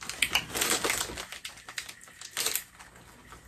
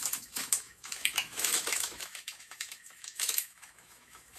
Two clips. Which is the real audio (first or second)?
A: first